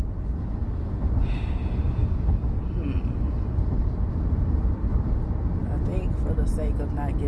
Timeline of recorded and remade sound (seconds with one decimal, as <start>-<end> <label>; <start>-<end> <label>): 0.0-7.3 recorded